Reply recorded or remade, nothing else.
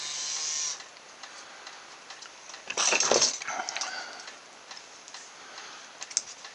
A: recorded